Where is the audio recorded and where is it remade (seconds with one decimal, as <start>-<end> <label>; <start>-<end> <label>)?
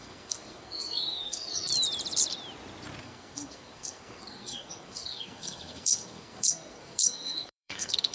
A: 0.0-1.7 remade; 1.7-3.0 recorded; 3.0-8.1 remade